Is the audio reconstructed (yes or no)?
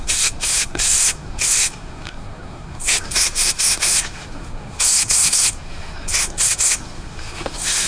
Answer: yes